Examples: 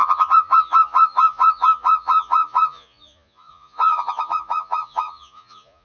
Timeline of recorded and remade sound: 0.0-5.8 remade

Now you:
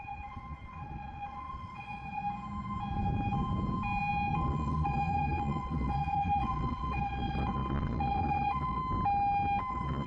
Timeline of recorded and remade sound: 0.0-2.2 remade; 2.2-4.3 recorded; 4.3-8.8 remade; 8.8-9.7 recorded; 9.7-10.1 remade